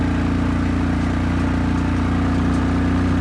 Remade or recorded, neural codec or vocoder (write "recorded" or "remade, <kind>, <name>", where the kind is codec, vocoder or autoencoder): recorded